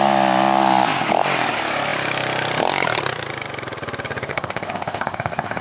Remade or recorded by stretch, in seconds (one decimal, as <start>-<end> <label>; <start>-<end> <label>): 0.0-4.3 recorded; 4.3-5.6 remade